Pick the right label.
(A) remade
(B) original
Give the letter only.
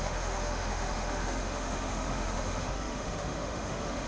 A